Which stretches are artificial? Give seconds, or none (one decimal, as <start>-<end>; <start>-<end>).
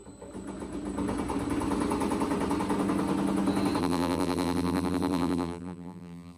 3.8-6.4